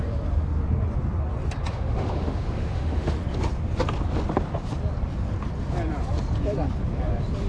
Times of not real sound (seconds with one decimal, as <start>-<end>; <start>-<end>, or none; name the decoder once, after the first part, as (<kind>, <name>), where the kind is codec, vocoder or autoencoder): 1.7-3.1 (autoencoder, DAC-VAE)

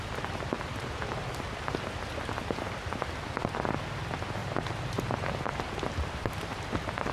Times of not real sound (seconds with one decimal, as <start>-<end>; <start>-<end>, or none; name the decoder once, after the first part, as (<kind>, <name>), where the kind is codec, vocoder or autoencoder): 4.4-7.1 (vocoder, BigVGAN v2)

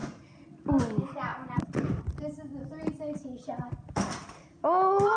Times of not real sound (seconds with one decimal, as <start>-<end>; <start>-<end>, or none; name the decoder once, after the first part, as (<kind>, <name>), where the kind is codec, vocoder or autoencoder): none

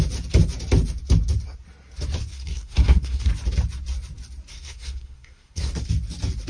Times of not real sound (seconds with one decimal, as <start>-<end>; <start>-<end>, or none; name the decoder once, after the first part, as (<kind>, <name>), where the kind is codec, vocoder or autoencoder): 2.3-3.3 (codec, SNAC); 4.5-5.7

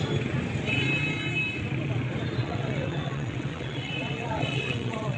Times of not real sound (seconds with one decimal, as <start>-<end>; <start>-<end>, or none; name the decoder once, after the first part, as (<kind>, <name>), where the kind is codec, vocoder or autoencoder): 2.4-5.2 (vocoder, WaveNeXt)